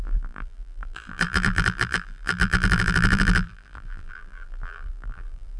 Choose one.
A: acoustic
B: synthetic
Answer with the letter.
B